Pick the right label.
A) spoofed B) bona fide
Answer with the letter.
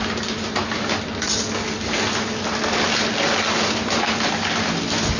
B